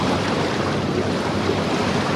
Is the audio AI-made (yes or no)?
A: yes